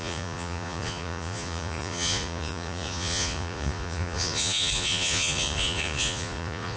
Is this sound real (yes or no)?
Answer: no